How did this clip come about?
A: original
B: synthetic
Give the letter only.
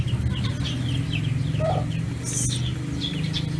A